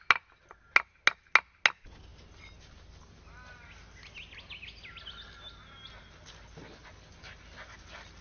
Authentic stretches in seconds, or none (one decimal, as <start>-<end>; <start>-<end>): 0.0-8.2